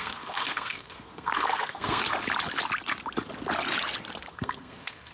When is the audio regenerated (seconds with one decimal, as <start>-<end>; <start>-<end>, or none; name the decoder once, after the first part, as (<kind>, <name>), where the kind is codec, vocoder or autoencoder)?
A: 0.0-2.0 (codec, SNAC); 4.3-5.1